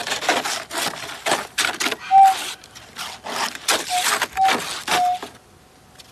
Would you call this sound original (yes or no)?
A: yes